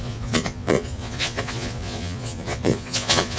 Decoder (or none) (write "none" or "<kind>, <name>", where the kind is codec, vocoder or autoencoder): vocoder, Vocos